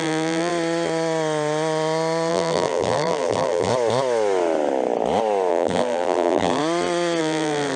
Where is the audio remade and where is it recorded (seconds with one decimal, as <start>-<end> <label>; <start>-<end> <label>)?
0.0-0.5 remade; 0.5-2.3 recorded; 2.3-3.7 remade; 3.7-5.5 recorded; 5.5-6.6 remade; 6.6-7.2 recorded; 7.2-7.8 remade